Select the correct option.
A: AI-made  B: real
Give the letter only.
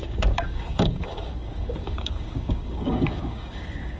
A